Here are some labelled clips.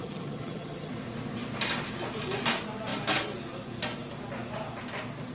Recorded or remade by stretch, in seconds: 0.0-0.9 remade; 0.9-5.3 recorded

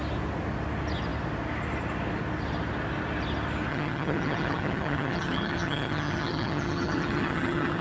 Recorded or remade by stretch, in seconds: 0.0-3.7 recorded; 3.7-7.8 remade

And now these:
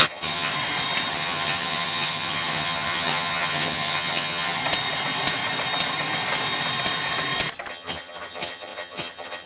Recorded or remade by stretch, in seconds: 0.0-0.5 remade; 0.5-1.1 recorded; 1.1-4.6 remade; 4.6-7.7 recorded; 7.7-9.5 remade

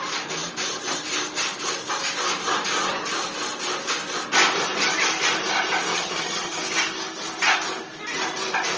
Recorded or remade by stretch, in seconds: 0.0-5.9 recorded; 5.9-6.6 remade; 6.6-8.8 recorded

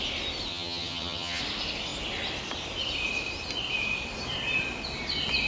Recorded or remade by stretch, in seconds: 0.0-0.5 recorded; 0.5-1.4 remade; 1.4-5.5 recorded

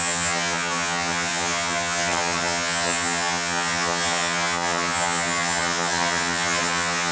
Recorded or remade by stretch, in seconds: 0.0-7.1 remade

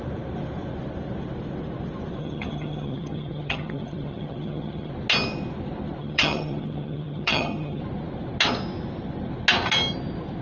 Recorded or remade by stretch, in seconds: 0.0-2.2 recorded; 2.2-4.9 remade; 4.9-6.0 recorded; 6.0-7.8 remade; 7.8-10.4 recorded

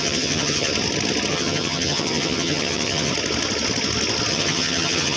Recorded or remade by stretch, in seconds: 0.0-0.7 remade; 0.7-1.3 recorded; 1.3-3.1 remade; 3.1-4.3 recorded; 4.3-5.2 remade